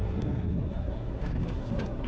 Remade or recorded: remade